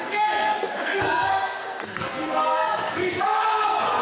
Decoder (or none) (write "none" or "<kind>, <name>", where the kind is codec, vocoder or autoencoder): codec, SNAC